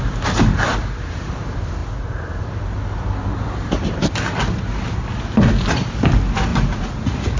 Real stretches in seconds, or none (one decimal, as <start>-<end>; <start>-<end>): 0.0-6.5